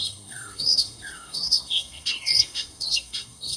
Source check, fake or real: fake